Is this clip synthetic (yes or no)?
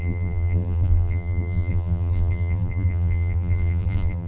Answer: yes